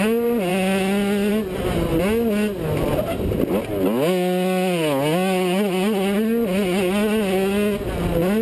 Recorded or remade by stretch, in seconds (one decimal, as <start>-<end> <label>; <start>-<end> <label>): 0.0-8.4 recorded